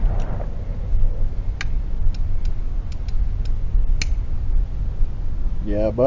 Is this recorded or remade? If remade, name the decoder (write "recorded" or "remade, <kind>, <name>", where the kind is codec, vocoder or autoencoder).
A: recorded